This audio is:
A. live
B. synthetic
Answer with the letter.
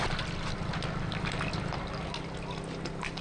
A